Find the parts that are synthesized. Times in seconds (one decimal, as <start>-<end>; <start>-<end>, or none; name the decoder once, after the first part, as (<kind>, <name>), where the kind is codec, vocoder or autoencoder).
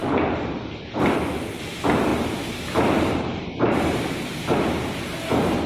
2.1-4.6 (vocoder, BigVGAN v2)